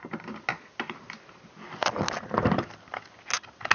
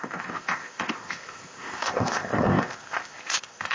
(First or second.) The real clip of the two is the first